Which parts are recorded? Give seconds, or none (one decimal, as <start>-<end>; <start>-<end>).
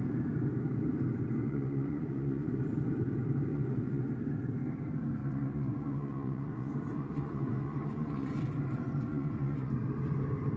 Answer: 0.0-1.4; 2.6-3.5; 4.0-5.2; 8.4-9.1; 9.7-10.6